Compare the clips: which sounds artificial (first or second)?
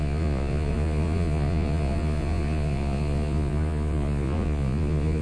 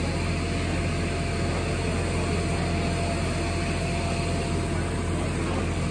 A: first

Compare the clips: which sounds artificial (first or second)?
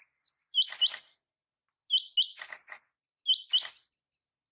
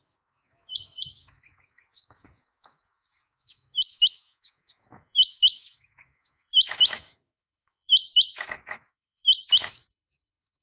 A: second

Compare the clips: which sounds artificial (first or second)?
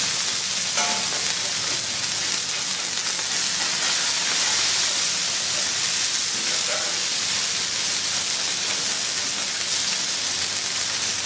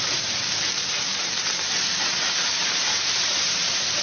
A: second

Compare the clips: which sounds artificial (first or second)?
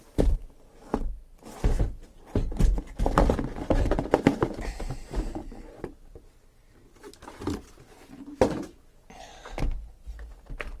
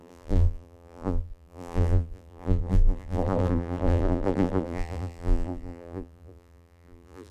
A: second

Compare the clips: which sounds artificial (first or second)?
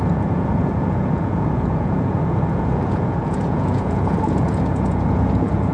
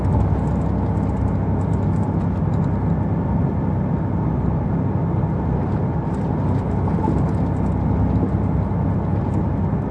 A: first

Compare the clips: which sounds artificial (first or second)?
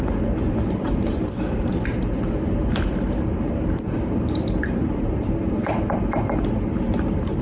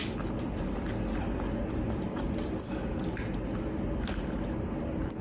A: first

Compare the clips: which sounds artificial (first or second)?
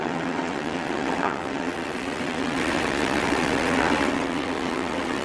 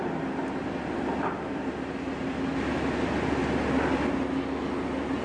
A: first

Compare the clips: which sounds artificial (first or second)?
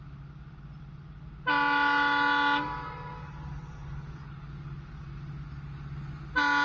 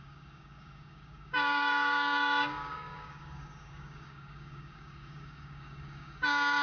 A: second